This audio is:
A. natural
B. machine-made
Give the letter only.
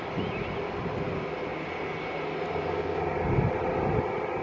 A